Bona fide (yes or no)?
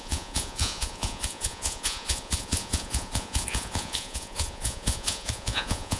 no